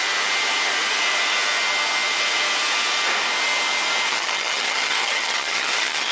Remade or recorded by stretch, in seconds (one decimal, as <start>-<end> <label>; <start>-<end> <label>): 0.0-4.1 recorded; 4.1-6.1 remade